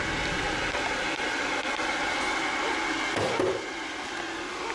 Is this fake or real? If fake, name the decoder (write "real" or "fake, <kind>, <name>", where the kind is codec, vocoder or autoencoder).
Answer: real